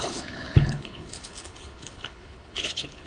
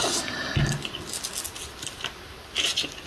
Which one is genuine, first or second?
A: second